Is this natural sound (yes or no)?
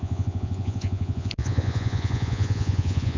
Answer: no